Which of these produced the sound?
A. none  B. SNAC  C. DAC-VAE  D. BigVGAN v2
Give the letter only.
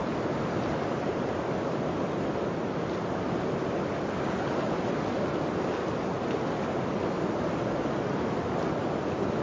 A